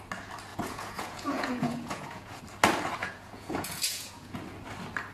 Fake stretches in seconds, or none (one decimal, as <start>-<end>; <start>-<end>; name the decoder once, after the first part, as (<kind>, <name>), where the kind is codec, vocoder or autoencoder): 0.5-2.4 (vocoder, Vocos); 3.0-4.4